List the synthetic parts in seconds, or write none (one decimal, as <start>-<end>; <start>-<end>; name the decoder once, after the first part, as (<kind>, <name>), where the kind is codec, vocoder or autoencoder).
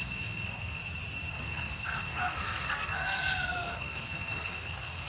0.0-0.8 (codec, SNAC); 1.3-5.1